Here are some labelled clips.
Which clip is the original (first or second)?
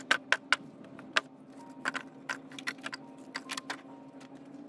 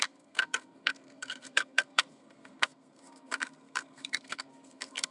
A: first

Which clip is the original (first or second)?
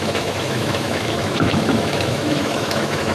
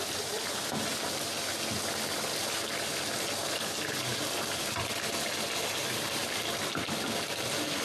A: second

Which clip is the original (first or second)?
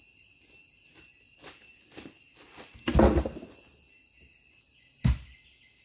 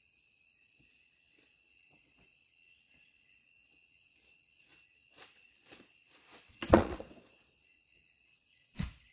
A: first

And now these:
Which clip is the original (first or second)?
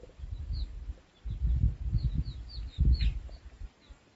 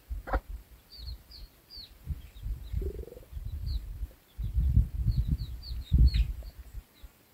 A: first